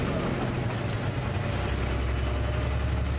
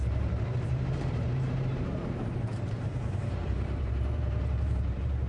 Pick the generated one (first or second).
second